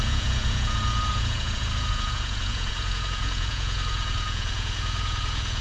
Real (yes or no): no